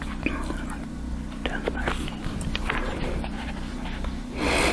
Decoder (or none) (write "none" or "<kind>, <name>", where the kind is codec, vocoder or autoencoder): none